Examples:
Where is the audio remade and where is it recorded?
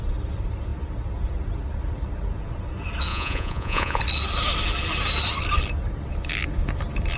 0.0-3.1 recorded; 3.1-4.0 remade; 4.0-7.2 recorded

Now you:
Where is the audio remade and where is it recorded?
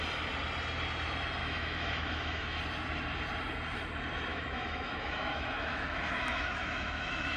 0.0-1.4 recorded; 1.4-2.6 remade; 2.6-4.3 recorded; 4.3-7.4 remade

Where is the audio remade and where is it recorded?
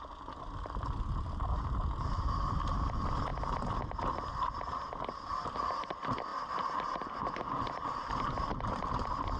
0.0-9.4 recorded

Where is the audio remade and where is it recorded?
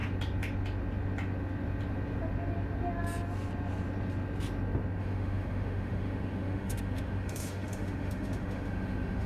0.0-5.0 recorded; 5.0-9.3 remade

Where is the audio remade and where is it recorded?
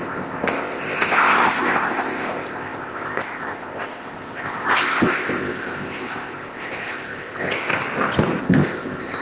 0.0-7.7 remade; 7.7-8.4 recorded; 8.4-9.2 remade